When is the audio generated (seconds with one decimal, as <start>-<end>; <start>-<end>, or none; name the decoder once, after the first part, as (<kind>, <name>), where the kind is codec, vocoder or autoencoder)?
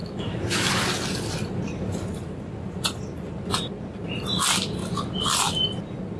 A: 0.0-0.7 (autoencoder, DAC-VAE)